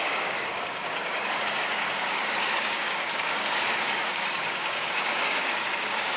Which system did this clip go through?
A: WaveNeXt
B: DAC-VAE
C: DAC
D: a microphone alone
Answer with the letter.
C